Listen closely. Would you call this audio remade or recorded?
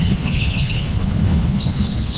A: remade